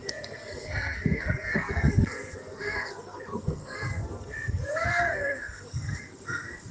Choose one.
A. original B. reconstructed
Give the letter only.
B